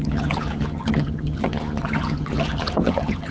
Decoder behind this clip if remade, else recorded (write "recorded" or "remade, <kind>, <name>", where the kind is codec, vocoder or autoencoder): remade, vocoder, HiFi-GAN